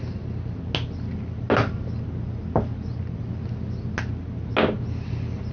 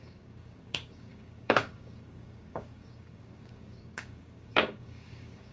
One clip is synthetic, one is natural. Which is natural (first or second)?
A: first